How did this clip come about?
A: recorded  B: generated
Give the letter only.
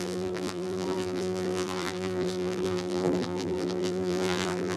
B